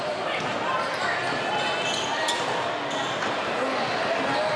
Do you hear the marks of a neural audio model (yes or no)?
no